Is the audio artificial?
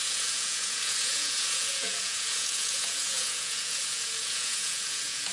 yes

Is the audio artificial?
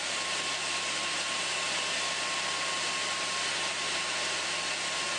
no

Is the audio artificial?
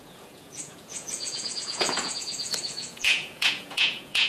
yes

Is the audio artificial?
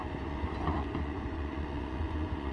yes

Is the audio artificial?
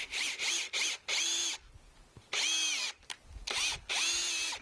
no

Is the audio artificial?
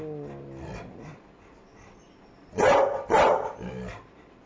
no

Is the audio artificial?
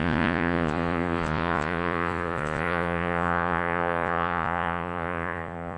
yes